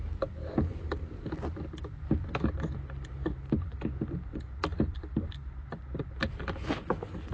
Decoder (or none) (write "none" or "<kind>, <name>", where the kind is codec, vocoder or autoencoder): none